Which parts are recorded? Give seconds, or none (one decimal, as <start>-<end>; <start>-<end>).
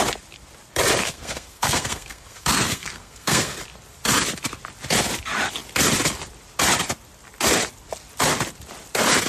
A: 0.0-1.0; 3.6-9.3